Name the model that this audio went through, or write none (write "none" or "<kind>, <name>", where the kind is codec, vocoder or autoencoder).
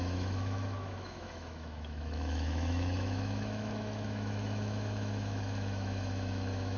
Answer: autoencoder, DAC-VAE